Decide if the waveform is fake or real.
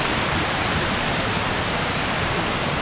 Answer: fake